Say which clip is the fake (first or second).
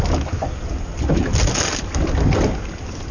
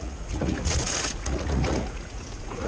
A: second